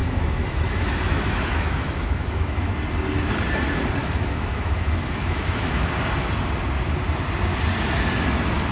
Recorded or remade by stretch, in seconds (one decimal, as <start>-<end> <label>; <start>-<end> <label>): 0.0-2.7 remade; 2.7-4.0 recorded; 4.0-5.9 remade; 5.9-8.7 recorded